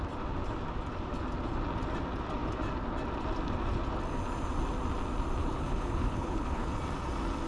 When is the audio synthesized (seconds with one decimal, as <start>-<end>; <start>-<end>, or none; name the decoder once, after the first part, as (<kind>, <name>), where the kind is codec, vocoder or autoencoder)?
5.4-6.7 (codec, HILCodec)

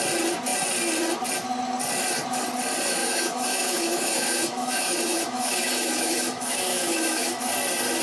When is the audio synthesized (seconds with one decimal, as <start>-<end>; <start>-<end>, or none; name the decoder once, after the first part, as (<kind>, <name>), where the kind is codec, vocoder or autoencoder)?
3.0-7.4 (autoencoder, DAC-VAE)

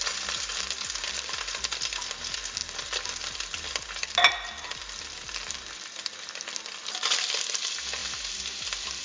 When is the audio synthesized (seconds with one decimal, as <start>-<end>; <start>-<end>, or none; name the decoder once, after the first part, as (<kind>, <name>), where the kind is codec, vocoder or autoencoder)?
none